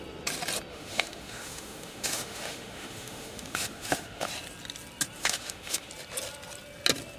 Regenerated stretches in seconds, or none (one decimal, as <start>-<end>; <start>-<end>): 0.7-4.3; 5.2-5.9